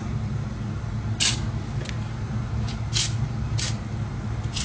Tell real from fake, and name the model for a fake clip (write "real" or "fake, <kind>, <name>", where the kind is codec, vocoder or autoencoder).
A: real